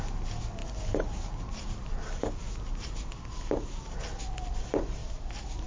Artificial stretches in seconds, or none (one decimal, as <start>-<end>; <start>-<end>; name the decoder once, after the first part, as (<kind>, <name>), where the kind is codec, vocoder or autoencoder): 5.0-5.7 (vocoder, BigVGAN v2)